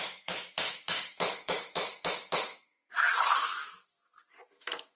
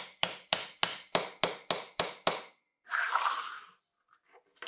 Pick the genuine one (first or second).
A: second